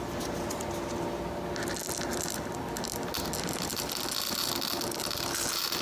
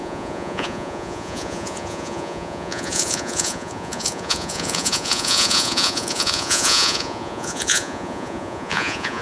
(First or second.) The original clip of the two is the first